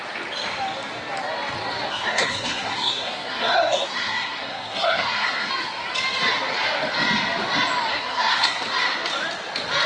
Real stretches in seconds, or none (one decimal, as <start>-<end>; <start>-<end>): 0.0-1.9; 5.5-7.9; 8.6-9.9